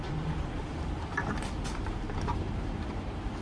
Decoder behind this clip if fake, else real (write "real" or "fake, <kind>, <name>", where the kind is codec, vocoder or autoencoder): fake, vocoder, BigVGAN v2